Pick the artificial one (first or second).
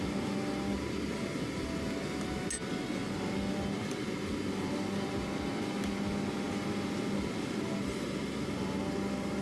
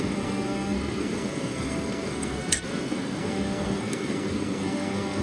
second